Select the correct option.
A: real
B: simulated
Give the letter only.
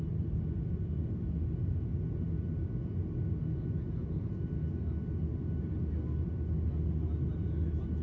A